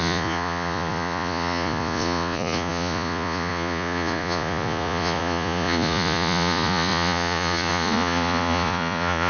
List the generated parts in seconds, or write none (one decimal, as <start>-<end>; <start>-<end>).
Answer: 0.0-9.3